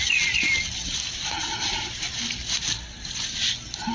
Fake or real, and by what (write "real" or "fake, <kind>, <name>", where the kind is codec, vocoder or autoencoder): real